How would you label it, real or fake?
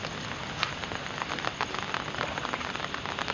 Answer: real